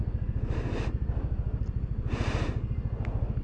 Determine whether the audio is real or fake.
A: real